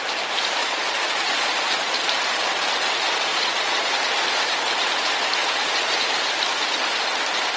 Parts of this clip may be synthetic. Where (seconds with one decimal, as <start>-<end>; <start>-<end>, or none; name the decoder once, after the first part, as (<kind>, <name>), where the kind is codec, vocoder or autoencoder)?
0.6-1.9 (vocoder, Vocos); 3.3-3.9